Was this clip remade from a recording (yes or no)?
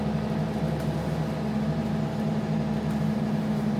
no